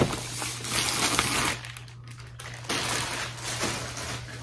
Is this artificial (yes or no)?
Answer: no